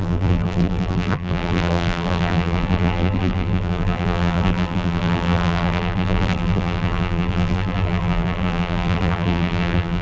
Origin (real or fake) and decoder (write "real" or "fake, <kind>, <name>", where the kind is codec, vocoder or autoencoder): fake, vocoder, BigVGAN v2